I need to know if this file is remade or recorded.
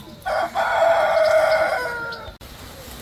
recorded